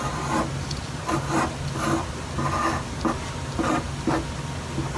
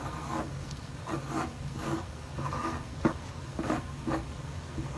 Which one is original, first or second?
first